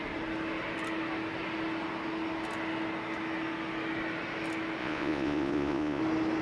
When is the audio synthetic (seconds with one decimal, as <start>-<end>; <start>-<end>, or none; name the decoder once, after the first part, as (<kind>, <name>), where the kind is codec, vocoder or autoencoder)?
4.8-6.0 (vocoder, Vocos)